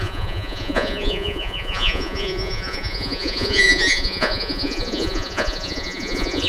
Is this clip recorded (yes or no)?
no